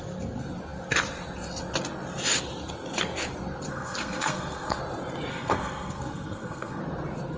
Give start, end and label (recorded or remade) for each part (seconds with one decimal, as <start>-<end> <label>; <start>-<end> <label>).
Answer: 0.0-3.7 recorded; 3.7-4.8 remade; 4.8-5.3 recorded; 5.3-6.8 remade; 6.8-7.4 recorded